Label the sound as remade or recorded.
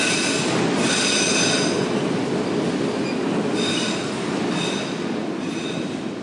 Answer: recorded